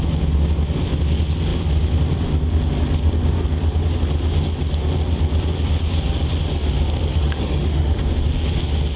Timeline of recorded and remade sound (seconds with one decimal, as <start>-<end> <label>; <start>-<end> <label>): 0.0-7.1 recorded; 7.1-8.0 remade; 8.0-9.0 recorded